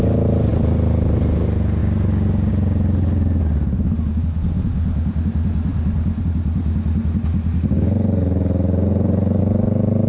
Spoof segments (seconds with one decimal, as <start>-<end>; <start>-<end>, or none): none